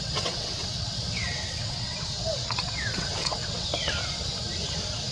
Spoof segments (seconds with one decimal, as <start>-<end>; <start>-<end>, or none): 0.0-3.7